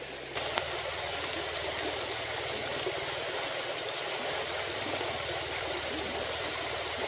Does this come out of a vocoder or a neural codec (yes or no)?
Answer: yes